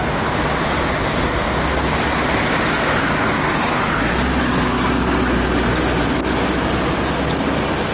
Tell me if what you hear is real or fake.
real